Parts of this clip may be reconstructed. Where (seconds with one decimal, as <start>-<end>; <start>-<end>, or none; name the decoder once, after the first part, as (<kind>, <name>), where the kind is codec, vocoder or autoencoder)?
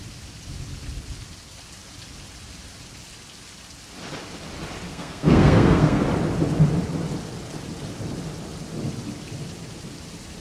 4.9-6.0 (codec, SNAC)